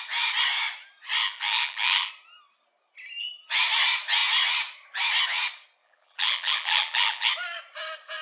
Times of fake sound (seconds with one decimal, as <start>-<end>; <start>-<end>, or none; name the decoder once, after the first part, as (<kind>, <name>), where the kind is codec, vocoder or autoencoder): 1.2-2.1 (vocoder, BigVGAN v2); 5.8-7.3